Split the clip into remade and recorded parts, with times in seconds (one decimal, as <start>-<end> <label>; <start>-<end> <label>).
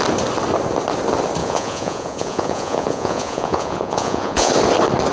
0.0-1.4 recorded; 1.4-4.5 remade; 4.5-5.1 recorded